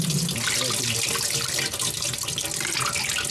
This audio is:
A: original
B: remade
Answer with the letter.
A